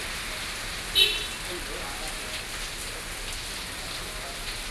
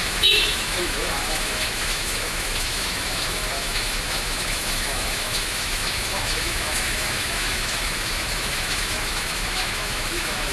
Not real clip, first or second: second